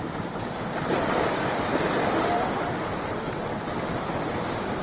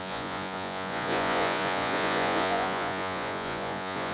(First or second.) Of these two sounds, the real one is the first